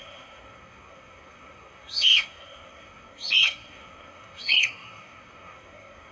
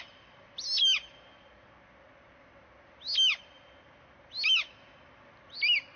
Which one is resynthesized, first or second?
first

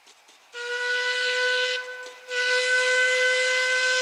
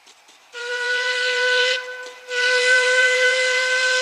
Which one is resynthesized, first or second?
second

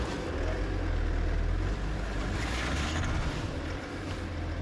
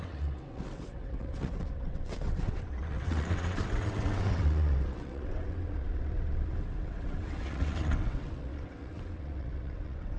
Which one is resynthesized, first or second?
second